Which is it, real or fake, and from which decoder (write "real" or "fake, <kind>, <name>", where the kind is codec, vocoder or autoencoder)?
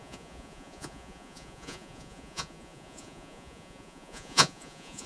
fake, vocoder, Vocos